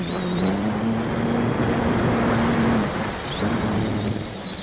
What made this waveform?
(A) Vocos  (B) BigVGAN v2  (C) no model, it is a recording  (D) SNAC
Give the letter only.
C